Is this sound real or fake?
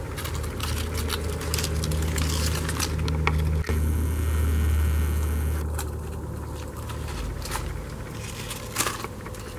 real